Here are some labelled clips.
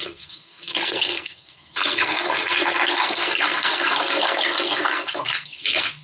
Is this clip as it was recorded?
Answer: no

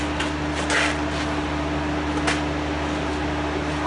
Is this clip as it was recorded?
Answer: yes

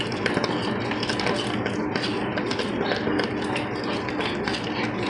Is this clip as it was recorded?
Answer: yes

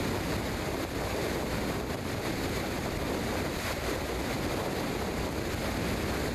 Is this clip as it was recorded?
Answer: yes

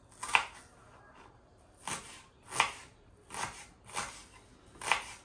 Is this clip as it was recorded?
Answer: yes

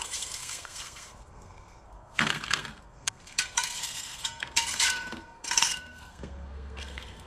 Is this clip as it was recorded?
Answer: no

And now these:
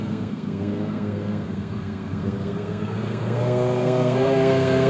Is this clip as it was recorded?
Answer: no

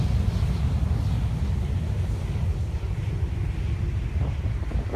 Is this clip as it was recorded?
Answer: yes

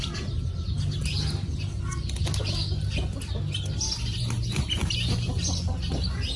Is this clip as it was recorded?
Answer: yes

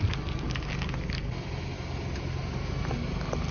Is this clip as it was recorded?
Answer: yes